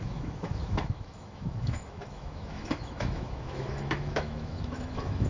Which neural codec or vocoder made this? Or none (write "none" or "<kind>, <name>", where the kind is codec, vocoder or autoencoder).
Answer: autoencoder, DAC-VAE